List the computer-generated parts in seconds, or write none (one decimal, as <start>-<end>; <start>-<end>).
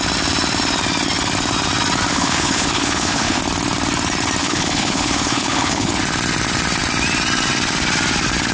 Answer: 2.1-3.4; 4.4-5.9